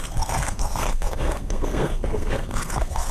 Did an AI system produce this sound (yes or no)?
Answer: yes